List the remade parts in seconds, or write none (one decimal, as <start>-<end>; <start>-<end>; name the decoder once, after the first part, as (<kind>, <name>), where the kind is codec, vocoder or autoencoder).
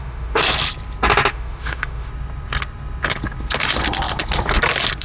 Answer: 0.0-0.4 (autoencoder, DAC-VAE); 1.3-2.1